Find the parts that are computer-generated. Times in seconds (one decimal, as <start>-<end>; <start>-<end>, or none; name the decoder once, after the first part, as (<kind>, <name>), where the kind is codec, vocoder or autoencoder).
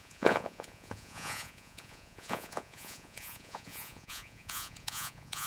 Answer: 0.0-5.5 (vocoder, Vocos)